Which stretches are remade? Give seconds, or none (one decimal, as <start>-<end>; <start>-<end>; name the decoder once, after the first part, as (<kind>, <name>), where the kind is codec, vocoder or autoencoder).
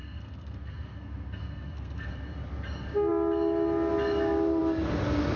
0.0-2.1 (codec, SNAC)